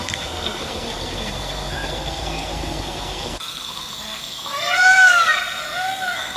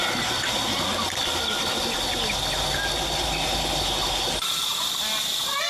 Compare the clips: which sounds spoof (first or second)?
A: first